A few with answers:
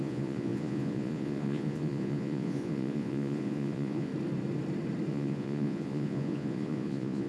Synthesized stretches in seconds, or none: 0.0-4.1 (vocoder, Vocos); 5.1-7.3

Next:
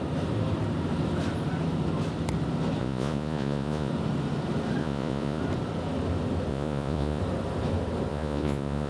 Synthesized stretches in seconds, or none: 2.8-3.9 (vocoder, Vocos); 4.8-5.4; 6.5-7.2; 8.1-8.9

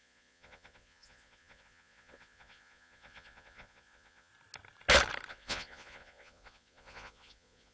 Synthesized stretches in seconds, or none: 0.0-4.3 (vocoder, Vocos); 5.3-7.7

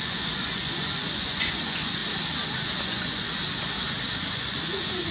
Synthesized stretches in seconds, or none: 0.0-2.0 (vocoder, Vocos); 2.8-3.4; 4.3-5.1

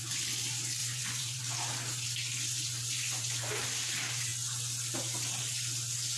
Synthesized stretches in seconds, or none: 0.8-1.4 (vocoder, Vocos); 2.6-3.5